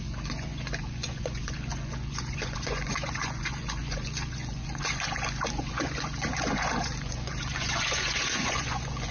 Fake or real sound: fake